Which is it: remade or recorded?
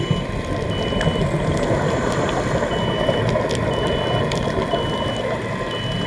recorded